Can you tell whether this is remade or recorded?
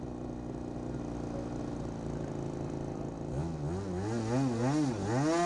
recorded